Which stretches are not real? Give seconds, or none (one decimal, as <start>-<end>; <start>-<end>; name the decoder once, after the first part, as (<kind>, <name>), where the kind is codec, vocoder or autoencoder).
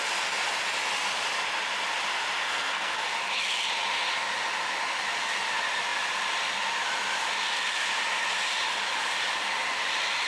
2.4-3.0 (codec, SNAC)